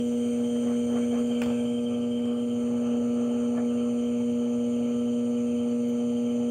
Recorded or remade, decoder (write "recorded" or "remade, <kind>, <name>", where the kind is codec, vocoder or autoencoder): recorded